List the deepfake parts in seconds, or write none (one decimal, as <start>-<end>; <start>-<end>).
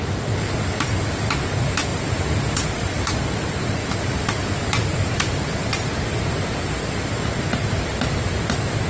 1.9-3.2; 3.8-5.9